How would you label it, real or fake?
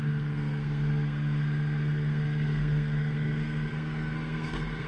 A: fake